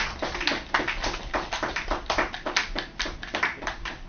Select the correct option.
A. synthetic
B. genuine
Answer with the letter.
B